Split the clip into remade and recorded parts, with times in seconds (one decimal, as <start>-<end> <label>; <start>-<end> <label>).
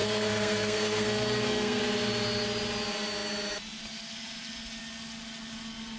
0.0-1.8 remade; 1.8-6.0 recorded